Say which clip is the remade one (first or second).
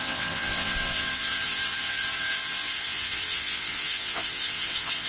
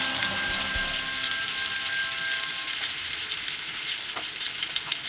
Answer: first